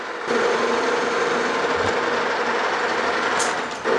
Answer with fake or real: real